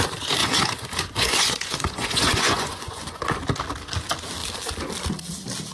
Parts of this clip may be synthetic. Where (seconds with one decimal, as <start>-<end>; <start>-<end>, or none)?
0.4-3.2